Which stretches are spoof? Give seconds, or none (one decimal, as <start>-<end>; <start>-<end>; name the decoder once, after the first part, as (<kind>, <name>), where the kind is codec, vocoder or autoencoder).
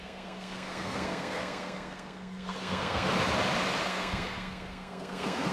0.0-3.1 (codec, SNAC); 3.8-5.5